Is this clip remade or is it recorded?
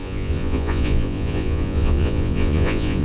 remade